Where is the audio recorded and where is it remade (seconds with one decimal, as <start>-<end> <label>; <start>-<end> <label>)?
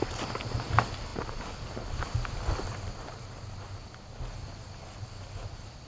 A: 0.0-5.9 recorded